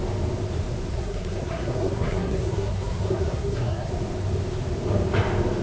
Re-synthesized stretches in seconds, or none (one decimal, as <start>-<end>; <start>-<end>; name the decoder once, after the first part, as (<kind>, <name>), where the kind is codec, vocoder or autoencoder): 0.9-3.9 (codec, SNAC)

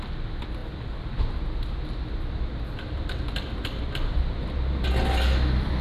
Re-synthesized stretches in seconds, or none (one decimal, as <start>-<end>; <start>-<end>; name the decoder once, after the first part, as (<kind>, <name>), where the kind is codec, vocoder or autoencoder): none

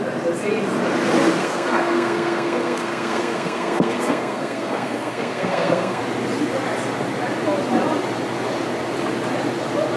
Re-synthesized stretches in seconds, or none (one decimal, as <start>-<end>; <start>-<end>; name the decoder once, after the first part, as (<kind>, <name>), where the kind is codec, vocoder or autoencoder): 1.4-6.0 (codec, SNAC)